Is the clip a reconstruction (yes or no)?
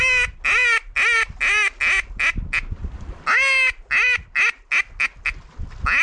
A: no